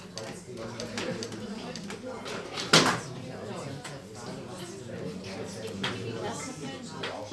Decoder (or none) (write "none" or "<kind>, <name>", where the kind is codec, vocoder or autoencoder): none